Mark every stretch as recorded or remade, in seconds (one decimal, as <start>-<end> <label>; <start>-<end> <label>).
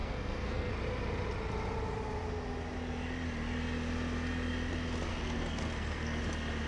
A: 0.0-0.7 remade; 0.7-5.1 recorded; 5.1-6.2 remade; 6.2-6.7 recorded